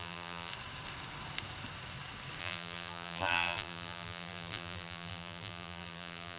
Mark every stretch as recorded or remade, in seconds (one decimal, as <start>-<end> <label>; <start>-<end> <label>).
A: 0.0-0.5 remade; 0.5-2.4 recorded; 2.4-6.4 remade